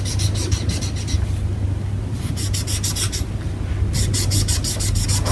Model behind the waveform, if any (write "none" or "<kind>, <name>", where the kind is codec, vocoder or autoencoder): none